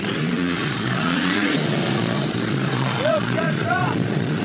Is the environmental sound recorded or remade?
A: remade